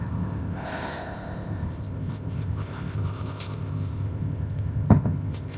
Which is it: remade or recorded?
remade